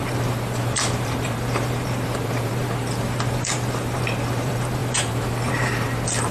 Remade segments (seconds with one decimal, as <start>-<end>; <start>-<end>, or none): 0.0-6.3